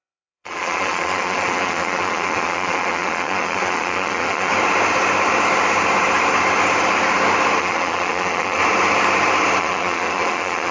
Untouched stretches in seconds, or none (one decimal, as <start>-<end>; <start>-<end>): 4.5-7.6; 8.6-9.6